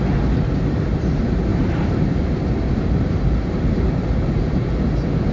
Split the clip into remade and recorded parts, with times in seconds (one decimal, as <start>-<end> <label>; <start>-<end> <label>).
0.0-1.5 recorded; 1.5-4.7 remade; 4.7-5.3 recorded

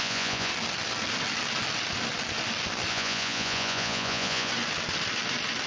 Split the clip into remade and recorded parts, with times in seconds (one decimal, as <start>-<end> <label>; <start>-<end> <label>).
0.0-0.5 remade; 0.5-2.9 recorded; 2.9-4.5 remade; 4.5-5.7 recorded

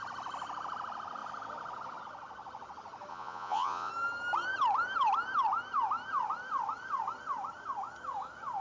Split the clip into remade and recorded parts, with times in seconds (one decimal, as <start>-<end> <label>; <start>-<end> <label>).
0.0-3.1 recorded; 3.1-3.9 remade; 3.9-8.6 recorded